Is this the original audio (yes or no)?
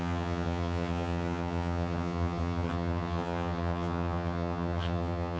no